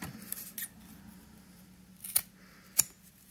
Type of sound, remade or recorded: recorded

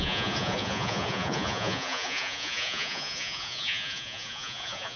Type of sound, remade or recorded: remade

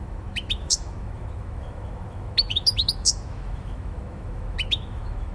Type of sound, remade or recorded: remade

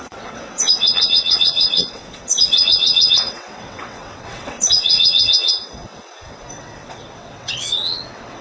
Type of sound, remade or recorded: remade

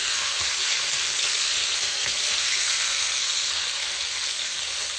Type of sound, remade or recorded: remade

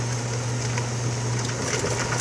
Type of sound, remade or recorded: recorded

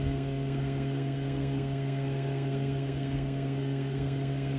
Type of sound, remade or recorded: remade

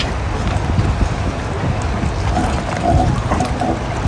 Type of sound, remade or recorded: recorded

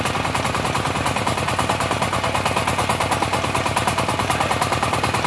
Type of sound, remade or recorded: recorded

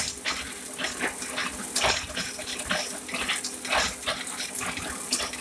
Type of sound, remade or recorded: recorded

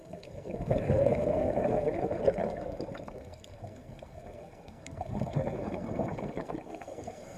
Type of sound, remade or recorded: remade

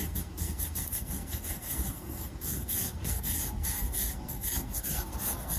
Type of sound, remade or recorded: remade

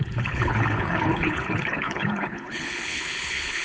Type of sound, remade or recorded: remade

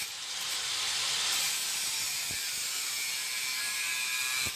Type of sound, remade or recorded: recorded